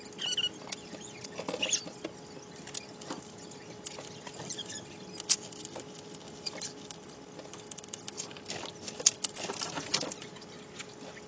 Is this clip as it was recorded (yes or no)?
yes